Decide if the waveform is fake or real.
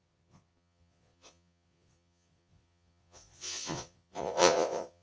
fake